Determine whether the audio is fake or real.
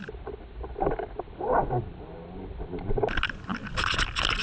real